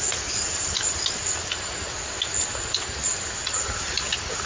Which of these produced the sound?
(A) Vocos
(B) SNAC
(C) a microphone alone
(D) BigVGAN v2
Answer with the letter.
C